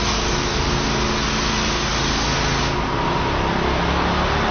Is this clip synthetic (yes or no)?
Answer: no